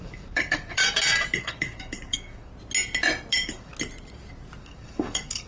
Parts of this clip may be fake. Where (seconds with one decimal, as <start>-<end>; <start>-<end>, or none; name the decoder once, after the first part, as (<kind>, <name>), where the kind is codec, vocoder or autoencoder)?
0.0-0.8 (codec, DAC); 1.4-2.5; 3.3-3.7; 4.6-5.5

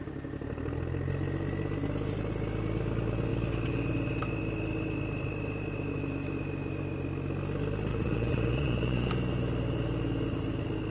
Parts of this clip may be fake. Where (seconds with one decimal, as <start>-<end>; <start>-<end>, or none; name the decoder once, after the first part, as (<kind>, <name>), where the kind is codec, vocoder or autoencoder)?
7.9-9.1 (vocoder, Vocos)

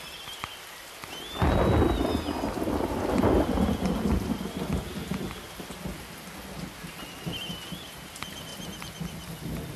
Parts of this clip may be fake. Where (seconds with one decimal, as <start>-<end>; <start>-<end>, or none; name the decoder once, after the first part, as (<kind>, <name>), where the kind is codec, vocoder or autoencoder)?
none